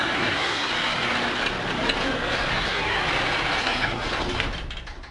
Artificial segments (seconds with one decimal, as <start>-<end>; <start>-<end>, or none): 0.0-0.7; 2.5-3.0; 3.6-4.1